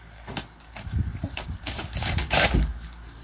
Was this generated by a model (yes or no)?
yes